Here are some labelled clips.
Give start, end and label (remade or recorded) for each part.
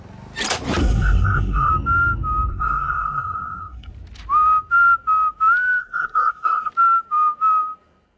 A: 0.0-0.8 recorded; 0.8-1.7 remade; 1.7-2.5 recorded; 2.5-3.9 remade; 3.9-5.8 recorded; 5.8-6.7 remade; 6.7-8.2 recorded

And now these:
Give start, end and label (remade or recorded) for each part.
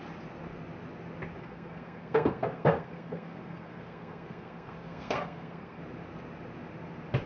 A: 0.0-1.4 recorded; 1.4-5.8 remade; 5.8-7.3 recorded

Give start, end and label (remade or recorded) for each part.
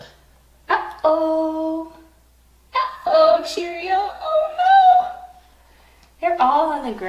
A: 0.0-2.7 recorded; 2.7-5.0 remade; 5.0-7.1 recorded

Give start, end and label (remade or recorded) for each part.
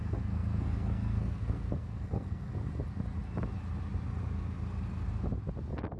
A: 0.0-2.5 remade; 2.5-6.0 recorded